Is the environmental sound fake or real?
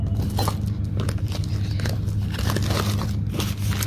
real